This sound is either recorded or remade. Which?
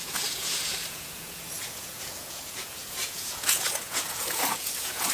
remade